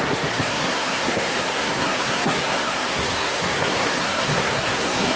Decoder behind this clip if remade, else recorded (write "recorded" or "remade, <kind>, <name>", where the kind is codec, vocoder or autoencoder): remade, codec, SNAC